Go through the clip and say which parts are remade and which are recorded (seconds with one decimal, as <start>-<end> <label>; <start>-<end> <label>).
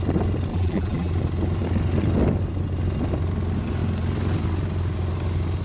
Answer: 0.0-0.5 recorded; 0.5-1.1 remade; 1.1-5.6 recorded